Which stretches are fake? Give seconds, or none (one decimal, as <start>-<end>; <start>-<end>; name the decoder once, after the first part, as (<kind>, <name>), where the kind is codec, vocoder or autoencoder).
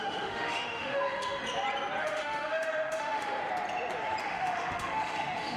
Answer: 0.0-1.4 (autoencoder, DAC-VAE); 2.0-3.4; 4.2-5.6